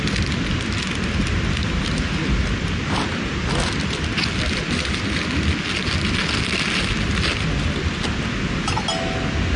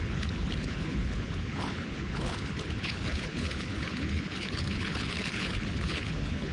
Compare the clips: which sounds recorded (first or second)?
first